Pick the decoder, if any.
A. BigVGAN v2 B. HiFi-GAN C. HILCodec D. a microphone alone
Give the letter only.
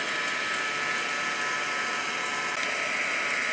D